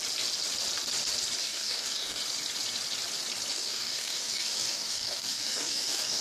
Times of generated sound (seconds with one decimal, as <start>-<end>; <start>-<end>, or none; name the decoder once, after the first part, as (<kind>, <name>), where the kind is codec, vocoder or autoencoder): 1.4-2.2 (codec, DAC); 3.5-6.2